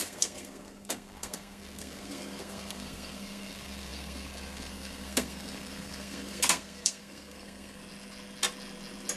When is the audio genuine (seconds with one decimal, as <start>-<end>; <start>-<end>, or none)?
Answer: 7.8-9.2